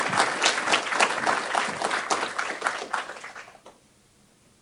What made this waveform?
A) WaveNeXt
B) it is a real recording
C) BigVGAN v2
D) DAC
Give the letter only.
B